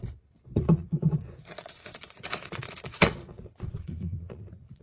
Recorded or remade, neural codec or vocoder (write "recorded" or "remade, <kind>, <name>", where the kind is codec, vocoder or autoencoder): remade, vocoder, Vocos